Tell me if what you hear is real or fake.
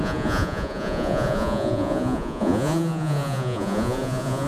fake